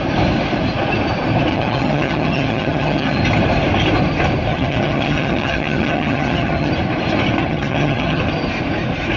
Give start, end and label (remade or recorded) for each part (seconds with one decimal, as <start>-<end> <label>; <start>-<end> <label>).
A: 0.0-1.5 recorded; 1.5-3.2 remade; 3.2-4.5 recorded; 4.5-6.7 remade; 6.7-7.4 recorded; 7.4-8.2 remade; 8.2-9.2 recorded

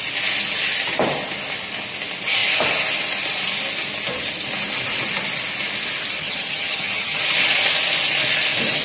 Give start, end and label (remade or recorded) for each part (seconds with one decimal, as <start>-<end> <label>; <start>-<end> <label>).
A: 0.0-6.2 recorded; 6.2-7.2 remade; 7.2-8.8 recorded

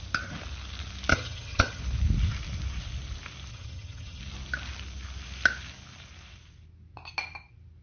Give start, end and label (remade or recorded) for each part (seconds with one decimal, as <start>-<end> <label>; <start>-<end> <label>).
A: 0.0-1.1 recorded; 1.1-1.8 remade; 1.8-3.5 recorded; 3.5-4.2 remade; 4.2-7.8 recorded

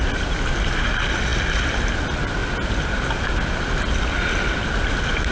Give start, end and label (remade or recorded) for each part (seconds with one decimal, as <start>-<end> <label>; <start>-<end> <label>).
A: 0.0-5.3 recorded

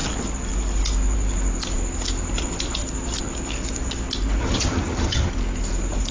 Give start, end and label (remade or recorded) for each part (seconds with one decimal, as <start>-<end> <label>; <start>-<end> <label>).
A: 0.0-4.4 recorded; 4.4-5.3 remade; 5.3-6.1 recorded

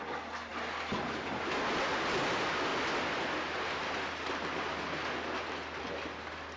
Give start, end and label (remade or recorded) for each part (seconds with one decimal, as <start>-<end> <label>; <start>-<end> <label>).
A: 0.0-6.6 recorded